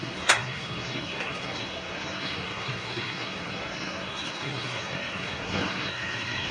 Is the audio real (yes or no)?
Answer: no